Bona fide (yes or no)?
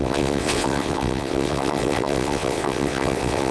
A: no